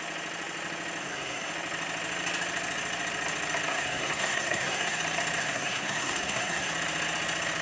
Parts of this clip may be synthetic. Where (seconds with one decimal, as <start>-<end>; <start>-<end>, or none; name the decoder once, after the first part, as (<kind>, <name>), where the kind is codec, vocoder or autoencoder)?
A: 1.0-1.5 (codec, SNAC); 3.7-5.0; 5.4-6.7